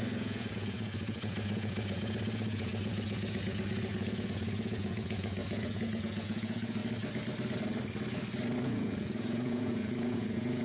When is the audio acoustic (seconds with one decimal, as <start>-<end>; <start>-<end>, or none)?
6.8-8.6